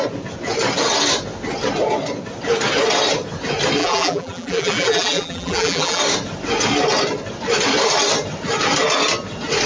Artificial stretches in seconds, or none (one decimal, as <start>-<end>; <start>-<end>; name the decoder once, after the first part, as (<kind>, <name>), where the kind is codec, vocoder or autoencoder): 3.8-6.0 (vocoder, BigVGAN v2)